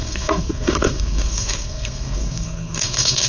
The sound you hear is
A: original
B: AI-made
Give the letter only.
B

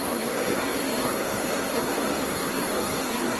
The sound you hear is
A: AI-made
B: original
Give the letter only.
A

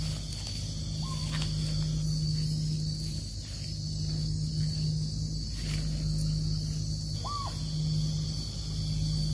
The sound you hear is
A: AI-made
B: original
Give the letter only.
B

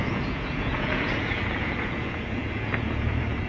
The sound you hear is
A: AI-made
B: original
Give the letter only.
A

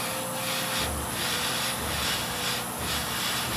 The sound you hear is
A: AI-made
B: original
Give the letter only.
B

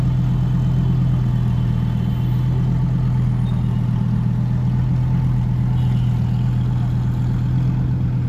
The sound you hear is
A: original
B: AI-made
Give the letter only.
A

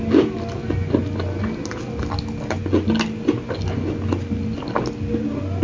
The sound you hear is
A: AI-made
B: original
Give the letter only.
B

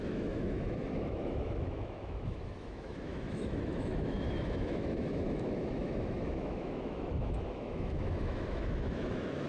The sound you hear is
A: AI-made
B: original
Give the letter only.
A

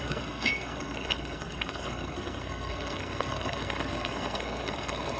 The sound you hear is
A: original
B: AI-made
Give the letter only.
B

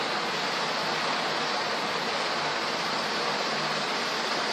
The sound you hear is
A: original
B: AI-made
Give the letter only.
A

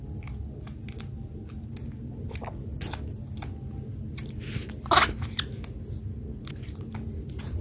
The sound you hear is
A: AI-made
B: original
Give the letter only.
B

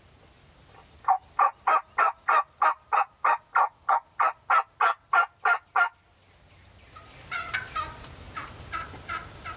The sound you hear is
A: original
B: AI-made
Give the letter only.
A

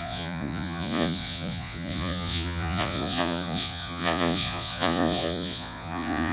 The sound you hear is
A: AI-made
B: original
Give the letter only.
A